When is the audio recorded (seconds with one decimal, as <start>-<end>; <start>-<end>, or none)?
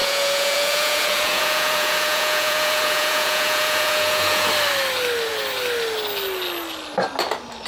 4.5-7.7